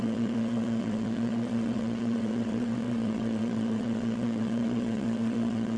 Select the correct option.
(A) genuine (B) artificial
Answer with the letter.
B